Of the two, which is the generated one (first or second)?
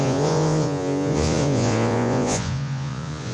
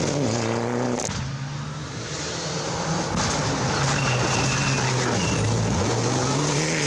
first